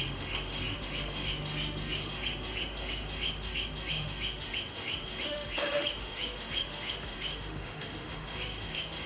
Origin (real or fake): fake